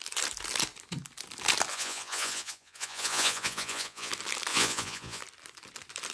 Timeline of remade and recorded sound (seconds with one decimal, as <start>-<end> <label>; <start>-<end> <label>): 0.0-1.7 recorded; 1.7-4.1 remade; 4.1-4.5 recorded; 4.5-5.2 remade; 5.2-6.1 recorded